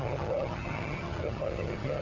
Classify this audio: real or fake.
fake